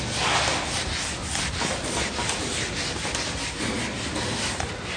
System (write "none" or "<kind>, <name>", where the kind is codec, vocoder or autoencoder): none